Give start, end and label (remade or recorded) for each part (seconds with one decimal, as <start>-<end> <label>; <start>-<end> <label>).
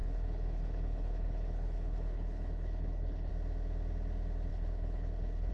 0.0-3.3 remade; 3.3-4.5 recorded; 4.5-5.5 remade